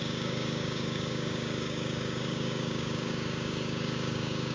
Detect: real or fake fake